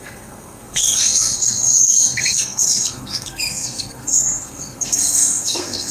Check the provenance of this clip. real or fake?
fake